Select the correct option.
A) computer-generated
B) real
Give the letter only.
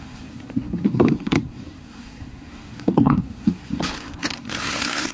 A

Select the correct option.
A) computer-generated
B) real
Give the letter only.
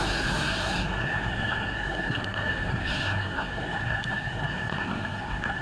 A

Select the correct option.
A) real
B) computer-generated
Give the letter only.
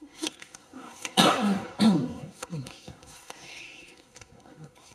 B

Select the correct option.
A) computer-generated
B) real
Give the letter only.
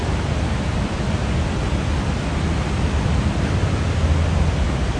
B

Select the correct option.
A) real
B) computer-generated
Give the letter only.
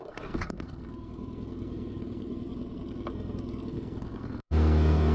B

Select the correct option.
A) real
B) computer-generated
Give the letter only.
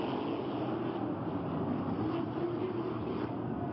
A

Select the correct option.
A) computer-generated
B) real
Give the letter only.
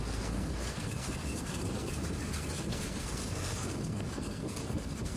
A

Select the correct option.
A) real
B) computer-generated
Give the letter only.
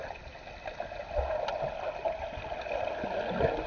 A